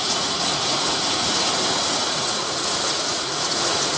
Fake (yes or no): yes